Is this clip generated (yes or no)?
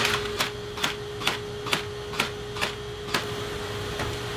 no